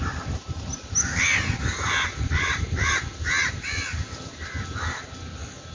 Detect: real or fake real